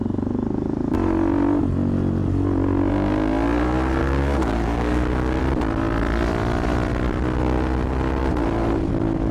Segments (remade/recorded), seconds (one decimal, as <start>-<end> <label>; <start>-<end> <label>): 0.0-4.0 recorded; 4.0-5.4 remade; 5.4-9.3 recorded